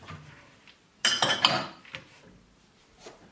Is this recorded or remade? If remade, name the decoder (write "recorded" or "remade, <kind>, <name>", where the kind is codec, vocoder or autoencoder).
recorded